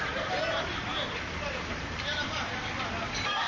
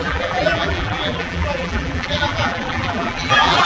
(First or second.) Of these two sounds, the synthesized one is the second